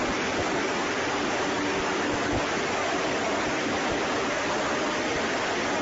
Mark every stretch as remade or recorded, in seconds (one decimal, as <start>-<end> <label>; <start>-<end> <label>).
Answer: 0.0-5.8 recorded